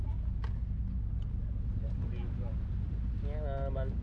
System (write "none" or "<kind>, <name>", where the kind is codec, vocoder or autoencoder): none